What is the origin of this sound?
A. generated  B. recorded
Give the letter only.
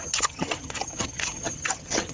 A